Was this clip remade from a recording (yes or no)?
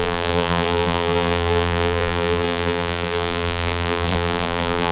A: yes